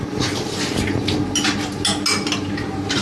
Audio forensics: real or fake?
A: real